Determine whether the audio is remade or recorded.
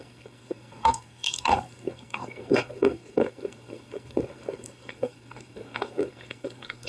remade